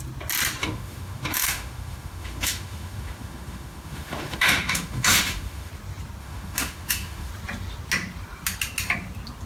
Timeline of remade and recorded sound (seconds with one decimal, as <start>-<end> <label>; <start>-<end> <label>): 0.0-0.6 recorded; 0.6-5.7 remade; 5.7-6.2 recorded; 6.2-7.3 remade; 7.3-9.5 recorded